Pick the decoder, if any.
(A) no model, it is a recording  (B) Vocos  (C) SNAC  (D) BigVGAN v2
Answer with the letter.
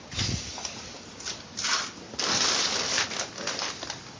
A